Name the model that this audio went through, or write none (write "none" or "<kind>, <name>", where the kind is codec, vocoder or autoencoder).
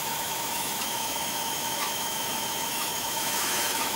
autoencoder, DAC-VAE